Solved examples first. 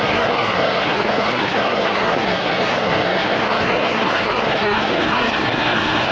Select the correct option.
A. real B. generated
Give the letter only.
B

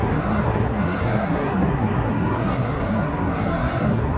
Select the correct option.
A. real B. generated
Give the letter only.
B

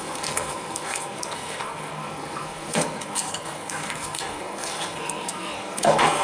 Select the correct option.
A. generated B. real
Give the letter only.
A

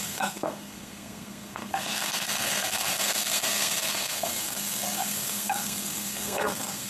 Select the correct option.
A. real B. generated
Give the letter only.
B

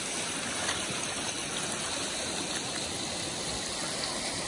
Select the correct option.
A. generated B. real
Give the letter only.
B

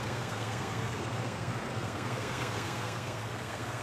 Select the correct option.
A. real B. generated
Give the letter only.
B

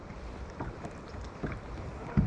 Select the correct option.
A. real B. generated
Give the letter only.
A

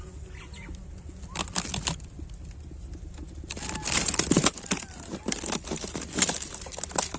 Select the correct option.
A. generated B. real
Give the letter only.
B